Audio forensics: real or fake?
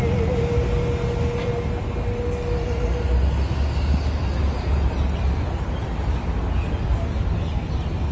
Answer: real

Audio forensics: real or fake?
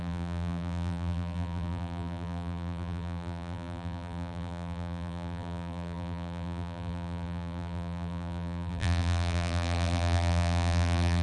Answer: fake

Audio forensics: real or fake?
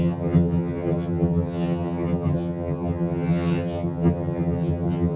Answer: fake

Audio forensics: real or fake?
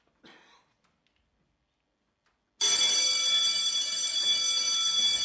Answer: real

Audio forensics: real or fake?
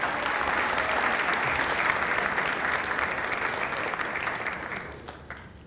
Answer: real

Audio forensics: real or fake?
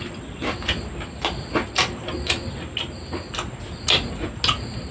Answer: real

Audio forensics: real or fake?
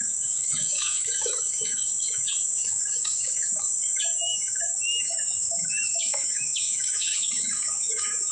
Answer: fake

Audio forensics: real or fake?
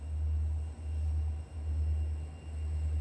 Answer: real